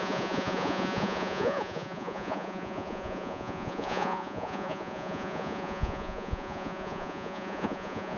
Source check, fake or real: fake